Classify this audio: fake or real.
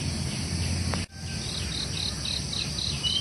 real